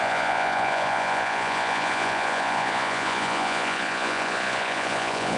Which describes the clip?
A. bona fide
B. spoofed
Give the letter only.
B